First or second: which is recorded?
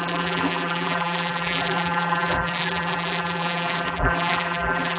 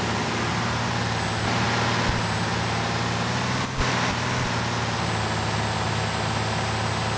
second